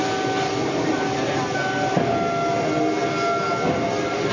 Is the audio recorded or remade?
recorded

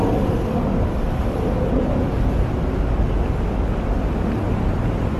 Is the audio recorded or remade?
recorded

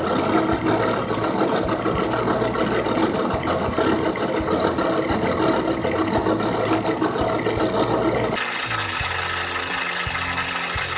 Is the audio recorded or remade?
recorded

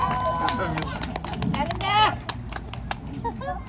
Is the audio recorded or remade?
recorded